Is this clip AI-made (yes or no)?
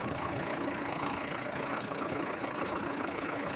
yes